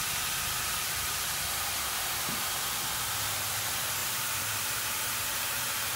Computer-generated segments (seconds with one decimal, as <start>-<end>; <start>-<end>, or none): 0.0-6.0